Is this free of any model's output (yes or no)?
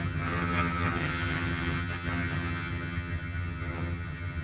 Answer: no